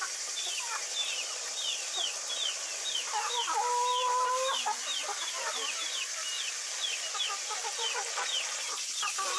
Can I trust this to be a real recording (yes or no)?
yes